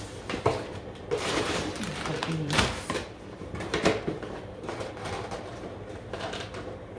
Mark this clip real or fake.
fake